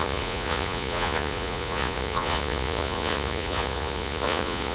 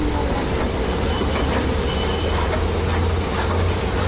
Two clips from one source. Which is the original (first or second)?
second